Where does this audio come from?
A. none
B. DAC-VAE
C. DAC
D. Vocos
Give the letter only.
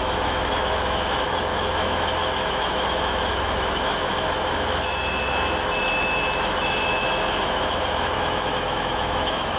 B